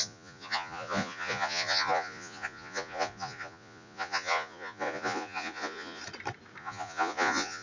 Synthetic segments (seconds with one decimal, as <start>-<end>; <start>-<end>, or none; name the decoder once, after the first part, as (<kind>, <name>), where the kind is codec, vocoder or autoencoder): 0.0-6.0 (vocoder, Vocos); 6.6-7.6

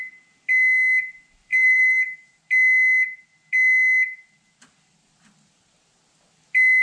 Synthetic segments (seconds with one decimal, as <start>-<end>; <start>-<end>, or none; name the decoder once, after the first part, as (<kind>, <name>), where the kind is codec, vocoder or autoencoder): 1.5-2.4 (vocoder, BigVGAN v2)

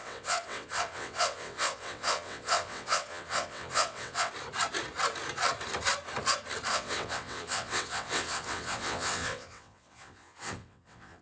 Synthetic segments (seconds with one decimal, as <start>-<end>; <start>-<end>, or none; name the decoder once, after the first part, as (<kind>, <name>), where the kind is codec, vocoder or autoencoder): 0.0-4.3 (vocoder, WaveNeXt); 6.7-11.2